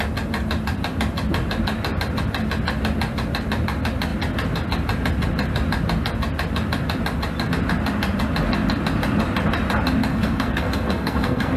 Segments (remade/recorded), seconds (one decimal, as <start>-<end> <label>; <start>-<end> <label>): 0.0-10.1 recorded; 10.1-11.6 remade